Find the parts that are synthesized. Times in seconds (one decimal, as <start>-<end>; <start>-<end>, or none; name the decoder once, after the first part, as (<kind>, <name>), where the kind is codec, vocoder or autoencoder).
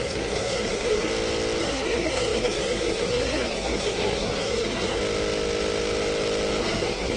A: 0.0-1.1 (codec, SNAC); 1.6-5.0; 6.6-7.2